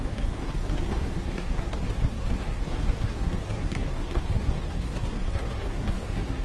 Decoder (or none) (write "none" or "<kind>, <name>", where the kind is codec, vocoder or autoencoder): codec, SNAC